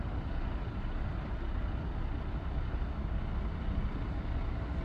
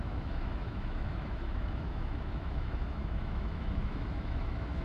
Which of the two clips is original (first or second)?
first